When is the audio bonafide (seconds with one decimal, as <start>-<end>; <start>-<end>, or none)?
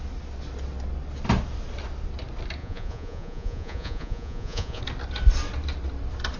0.0-2.6; 4.8-6.4